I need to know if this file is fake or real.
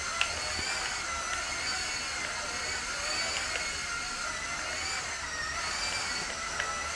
real